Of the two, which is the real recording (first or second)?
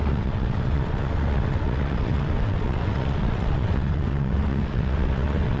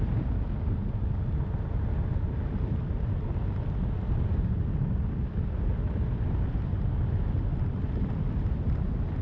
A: second